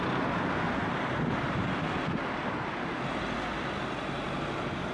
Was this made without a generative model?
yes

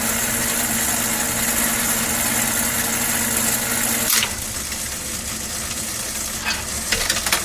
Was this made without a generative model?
yes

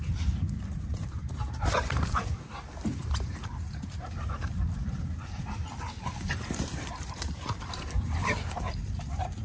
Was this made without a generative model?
no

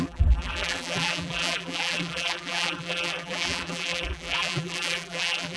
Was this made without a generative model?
no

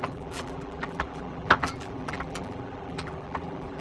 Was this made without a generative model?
no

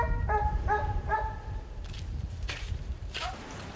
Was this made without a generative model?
no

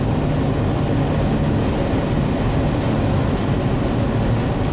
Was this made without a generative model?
yes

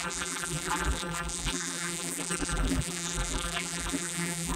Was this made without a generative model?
no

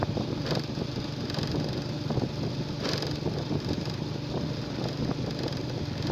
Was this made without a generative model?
yes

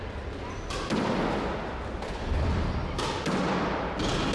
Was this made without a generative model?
yes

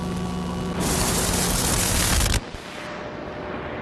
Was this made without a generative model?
yes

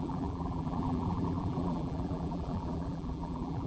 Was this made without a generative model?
no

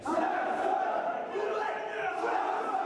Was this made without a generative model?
yes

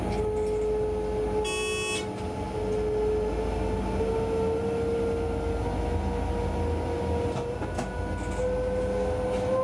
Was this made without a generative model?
yes